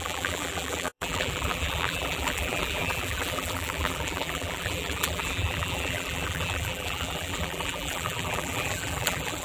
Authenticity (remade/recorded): remade